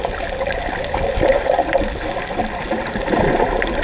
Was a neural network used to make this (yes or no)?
no